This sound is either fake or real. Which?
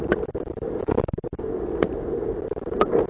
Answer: fake